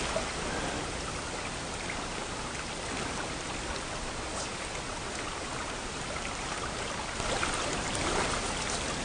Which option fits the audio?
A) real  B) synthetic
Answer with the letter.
A